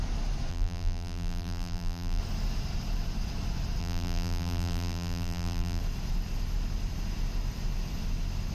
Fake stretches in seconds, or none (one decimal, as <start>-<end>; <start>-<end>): 0.5-2.2; 3.8-5.8